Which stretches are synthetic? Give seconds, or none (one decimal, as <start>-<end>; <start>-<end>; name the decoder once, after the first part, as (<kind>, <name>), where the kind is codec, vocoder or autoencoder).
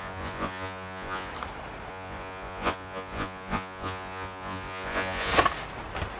0.0-1.3 (vocoder, Vocos); 1.9-5.3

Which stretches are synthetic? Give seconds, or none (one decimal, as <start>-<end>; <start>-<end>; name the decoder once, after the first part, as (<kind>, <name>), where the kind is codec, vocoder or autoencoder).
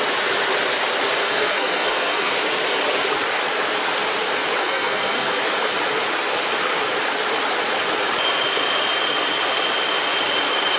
1.2-2.3 (codec, SNAC); 4.6-5.4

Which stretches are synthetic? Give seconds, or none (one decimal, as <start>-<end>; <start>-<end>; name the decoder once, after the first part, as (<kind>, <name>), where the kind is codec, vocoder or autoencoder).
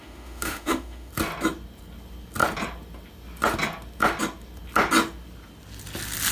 0.0-1.1 (autoencoder, DAC-VAE)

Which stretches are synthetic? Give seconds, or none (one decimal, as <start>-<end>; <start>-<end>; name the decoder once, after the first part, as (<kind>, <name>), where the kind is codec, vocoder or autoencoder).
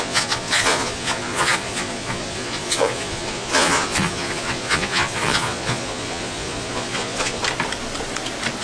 0.0-7.4 (vocoder, Vocos)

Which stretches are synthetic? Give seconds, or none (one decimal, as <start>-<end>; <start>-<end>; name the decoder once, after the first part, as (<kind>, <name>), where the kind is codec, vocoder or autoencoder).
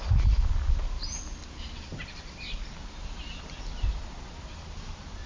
none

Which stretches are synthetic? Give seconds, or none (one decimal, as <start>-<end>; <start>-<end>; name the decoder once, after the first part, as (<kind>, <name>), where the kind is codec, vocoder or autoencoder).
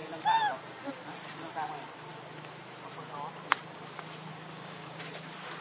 4.3-5.0 (codec, DAC)